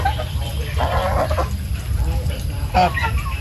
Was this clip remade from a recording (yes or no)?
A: no